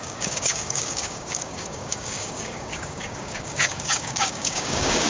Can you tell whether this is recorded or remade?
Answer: remade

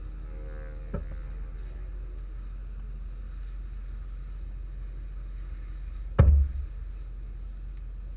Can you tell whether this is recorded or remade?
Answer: recorded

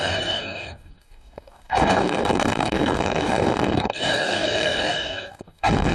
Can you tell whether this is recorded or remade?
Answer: remade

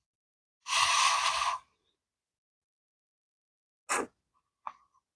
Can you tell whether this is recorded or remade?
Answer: recorded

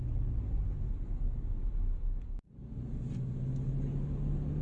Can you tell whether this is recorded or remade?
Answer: recorded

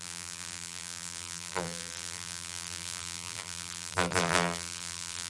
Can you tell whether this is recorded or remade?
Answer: remade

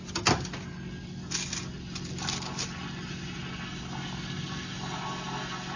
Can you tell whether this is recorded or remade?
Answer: recorded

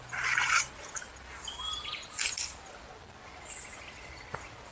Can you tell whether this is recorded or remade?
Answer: recorded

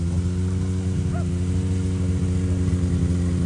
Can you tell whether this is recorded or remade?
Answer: recorded